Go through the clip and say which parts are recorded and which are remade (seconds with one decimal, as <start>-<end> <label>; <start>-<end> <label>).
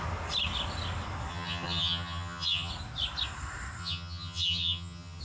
0.0-1.3 recorded; 1.3-2.7 remade; 2.7-3.8 recorded; 3.8-5.2 remade